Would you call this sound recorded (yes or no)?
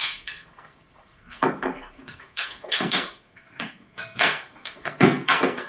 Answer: no